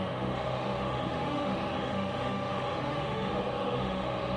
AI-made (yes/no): yes